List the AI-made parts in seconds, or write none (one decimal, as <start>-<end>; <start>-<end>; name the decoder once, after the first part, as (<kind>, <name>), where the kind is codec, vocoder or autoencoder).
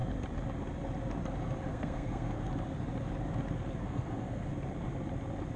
1.7-2.5 (codec, SNAC); 3.8-4.5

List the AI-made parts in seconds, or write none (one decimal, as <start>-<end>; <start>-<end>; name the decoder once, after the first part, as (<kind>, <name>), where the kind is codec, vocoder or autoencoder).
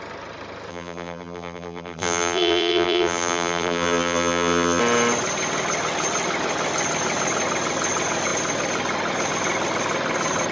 0.7-4.8 (vocoder, BigVGAN v2)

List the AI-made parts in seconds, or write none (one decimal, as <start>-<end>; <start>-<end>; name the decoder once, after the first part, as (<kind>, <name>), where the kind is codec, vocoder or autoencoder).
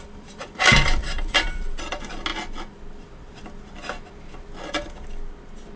1.0-1.8 (vocoder, BigVGAN v2)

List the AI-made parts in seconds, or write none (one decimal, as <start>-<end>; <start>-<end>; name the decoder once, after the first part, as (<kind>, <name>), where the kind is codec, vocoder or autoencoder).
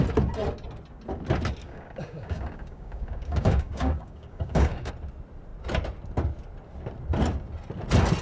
1.6-4.9 (codec, DAC)